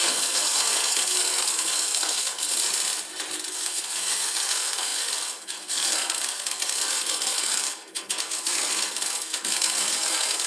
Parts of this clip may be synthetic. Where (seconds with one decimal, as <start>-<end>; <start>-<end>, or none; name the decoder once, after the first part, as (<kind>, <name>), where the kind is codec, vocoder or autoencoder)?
0.0-2.5 (codec, SNAC); 3.5-10.5